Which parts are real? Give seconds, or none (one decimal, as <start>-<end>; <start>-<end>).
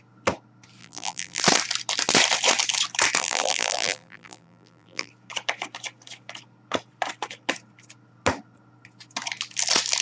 0.0-0.8; 1.4-3.2; 5.1-10.0